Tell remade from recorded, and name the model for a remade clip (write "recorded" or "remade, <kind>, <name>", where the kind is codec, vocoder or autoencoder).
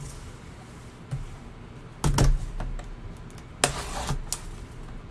recorded